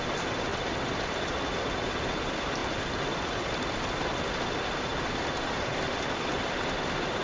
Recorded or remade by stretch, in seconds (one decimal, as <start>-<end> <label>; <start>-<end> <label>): 0.0-0.5 recorded; 0.5-1.2 remade; 1.2-2.6 recorded; 2.6-3.8 remade; 3.8-4.9 recorded; 4.9-5.9 remade; 5.9-7.2 recorded